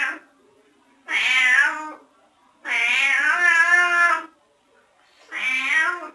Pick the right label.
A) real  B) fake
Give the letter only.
A